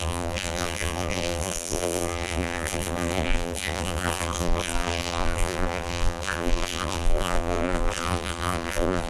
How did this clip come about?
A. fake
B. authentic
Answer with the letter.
A